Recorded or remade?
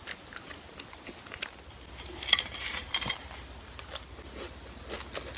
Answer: recorded